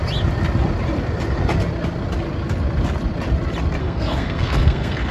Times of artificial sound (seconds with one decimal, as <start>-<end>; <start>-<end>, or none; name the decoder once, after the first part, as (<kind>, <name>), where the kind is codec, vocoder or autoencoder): 3.8-5.1 (codec, SNAC)